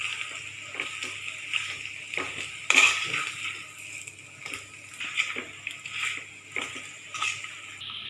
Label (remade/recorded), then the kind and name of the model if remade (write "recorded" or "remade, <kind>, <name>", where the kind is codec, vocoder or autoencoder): recorded